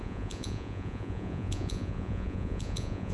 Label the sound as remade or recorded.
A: remade